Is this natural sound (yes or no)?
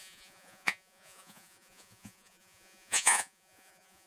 no